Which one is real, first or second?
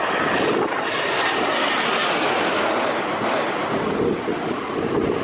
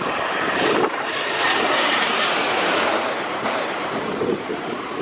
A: first